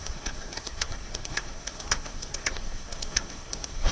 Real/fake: fake